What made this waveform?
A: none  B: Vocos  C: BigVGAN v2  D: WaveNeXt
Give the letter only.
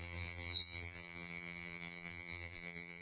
C